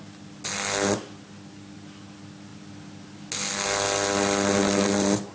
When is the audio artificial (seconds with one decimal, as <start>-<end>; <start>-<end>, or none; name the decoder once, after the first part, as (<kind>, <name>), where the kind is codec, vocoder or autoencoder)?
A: none

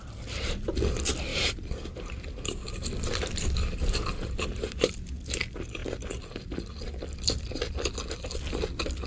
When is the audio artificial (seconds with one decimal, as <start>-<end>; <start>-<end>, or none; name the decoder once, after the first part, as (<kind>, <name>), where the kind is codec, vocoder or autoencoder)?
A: 1.3-4.9 (vocoder, BigVGAN v2)

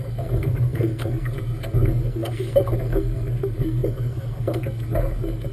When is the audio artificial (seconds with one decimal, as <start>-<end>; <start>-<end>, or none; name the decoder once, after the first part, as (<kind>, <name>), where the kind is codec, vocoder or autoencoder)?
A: 0.0-5.5 (codec, SNAC)

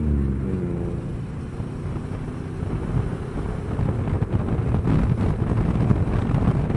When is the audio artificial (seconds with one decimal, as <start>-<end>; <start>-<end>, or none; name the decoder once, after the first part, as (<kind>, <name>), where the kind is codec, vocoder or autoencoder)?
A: 1.1-1.7 (vocoder, BigVGAN v2)